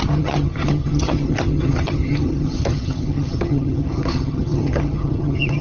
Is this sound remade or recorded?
remade